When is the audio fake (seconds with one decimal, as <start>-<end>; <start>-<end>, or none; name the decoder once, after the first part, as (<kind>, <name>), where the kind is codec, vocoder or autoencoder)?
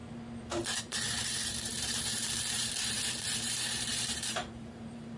0.8-5.2 (vocoder, BigVGAN v2)